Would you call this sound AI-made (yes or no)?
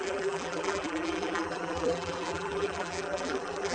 yes